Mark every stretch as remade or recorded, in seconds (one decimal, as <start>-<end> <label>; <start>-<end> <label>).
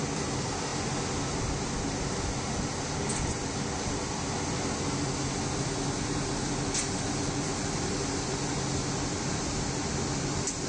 0.0-10.7 recorded